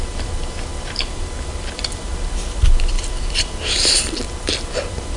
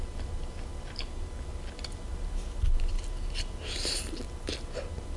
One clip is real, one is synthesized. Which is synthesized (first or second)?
first